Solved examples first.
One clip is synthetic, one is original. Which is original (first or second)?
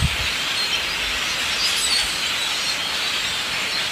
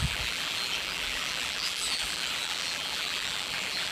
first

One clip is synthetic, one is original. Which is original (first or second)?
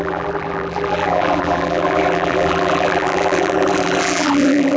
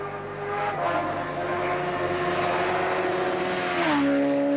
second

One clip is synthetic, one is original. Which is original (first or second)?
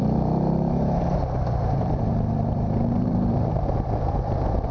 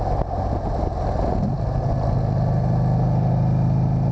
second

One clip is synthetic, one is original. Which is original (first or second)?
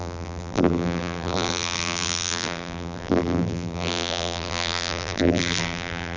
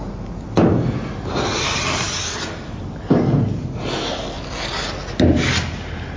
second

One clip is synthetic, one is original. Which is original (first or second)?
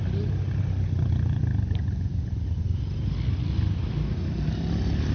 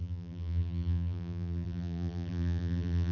first